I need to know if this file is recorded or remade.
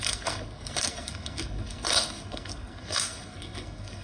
remade